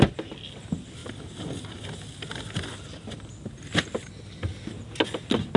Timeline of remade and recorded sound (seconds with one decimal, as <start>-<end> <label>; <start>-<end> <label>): 0.0-5.6 recorded